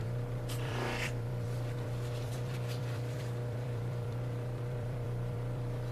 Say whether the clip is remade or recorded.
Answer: remade